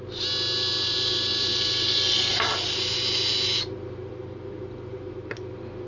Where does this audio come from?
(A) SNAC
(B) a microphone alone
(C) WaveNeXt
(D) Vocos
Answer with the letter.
B